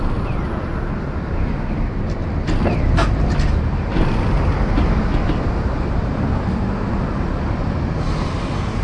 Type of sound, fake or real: real